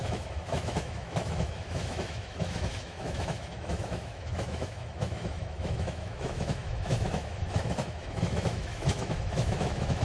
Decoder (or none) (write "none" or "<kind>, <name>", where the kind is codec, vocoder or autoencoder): autoencoder, DAC-VAE